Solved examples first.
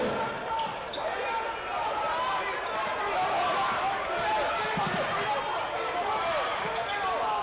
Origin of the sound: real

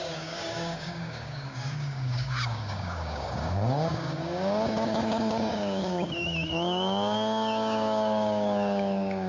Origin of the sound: fake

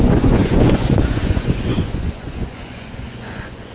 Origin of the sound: fake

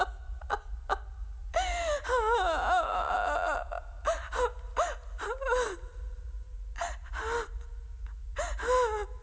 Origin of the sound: real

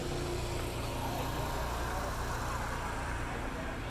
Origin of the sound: real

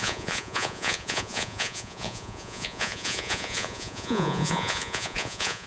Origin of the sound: fake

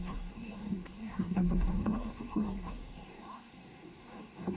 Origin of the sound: fake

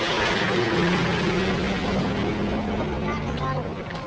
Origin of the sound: real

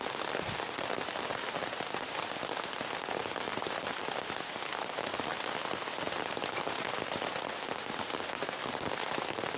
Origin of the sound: real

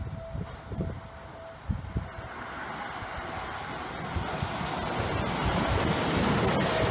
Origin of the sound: real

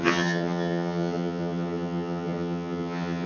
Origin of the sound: fake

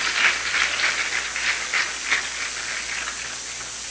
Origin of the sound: real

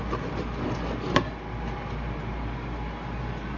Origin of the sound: real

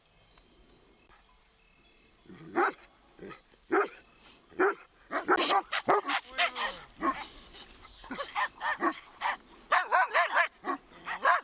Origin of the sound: real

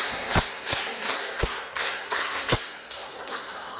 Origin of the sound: fake